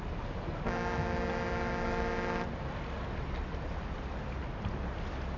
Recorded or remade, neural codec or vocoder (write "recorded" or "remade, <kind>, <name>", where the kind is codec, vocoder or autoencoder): recorded